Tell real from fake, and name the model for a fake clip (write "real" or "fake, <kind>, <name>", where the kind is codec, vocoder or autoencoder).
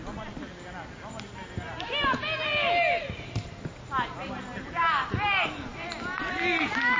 real